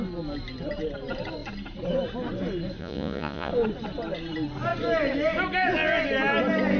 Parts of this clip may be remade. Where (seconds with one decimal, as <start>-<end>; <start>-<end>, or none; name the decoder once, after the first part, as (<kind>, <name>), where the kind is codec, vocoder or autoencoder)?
2.8-3.5 (vocoder, Vocos)